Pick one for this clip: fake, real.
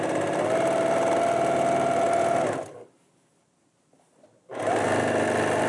real